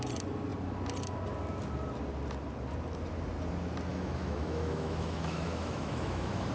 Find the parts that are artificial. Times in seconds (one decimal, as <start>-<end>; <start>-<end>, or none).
3.9-6.5